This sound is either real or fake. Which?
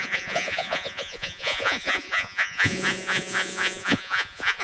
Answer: fake